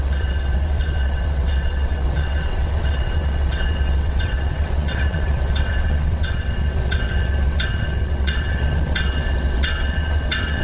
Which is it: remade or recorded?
remade